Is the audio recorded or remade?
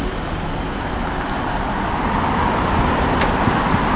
recorded